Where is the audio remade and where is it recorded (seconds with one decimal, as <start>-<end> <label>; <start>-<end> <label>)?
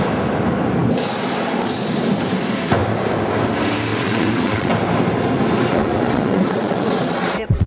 0.0-3.9 recorded; 3.9-4.7 remade; 4.7-5.7 recorded; 5.7-7.7 remade